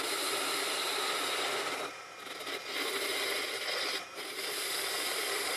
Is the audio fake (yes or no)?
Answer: no